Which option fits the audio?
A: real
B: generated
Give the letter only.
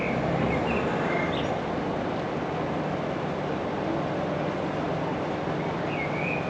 A